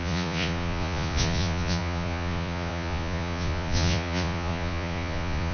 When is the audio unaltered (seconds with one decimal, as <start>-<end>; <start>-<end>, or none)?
none